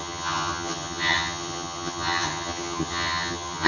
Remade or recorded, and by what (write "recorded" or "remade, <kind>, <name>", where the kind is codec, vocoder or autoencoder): remade, vocoder, HiFi-GAN